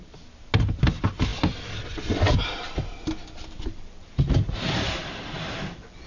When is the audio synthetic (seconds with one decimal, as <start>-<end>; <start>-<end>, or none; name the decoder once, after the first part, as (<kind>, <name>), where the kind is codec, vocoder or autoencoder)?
none